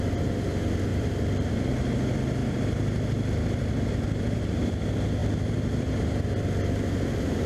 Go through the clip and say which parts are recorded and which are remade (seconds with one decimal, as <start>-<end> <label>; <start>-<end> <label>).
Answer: 0.0-0.9 recorded; 0.9-1.7 remade; 1.7-2.4 recorded; 2.4-4.7 remade; 4.7-5.2 recorded; 5.2-6.8 remade; 6.8-7.5 recorded